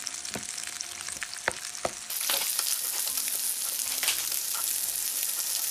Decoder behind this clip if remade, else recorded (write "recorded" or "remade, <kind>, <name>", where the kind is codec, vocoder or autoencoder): recorded